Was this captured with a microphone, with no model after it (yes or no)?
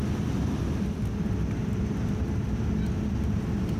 yes